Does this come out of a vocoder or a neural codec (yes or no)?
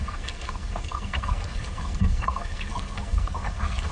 yes